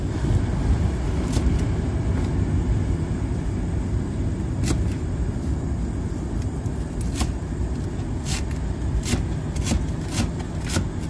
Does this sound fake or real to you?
real